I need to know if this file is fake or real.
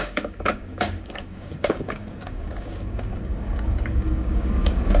fake